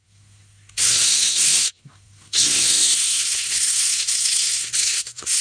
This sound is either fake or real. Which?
fake